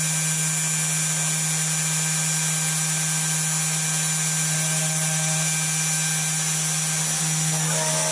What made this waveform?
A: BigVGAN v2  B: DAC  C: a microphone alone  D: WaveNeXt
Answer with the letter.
C